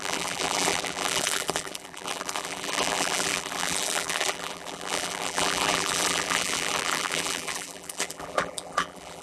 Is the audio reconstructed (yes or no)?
yes